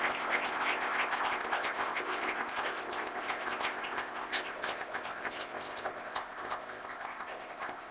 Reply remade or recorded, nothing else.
remade